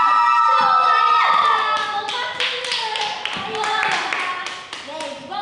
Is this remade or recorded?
recorded